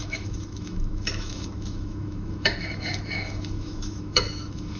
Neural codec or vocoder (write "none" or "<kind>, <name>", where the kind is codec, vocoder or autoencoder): autoencoder, DAC-VAE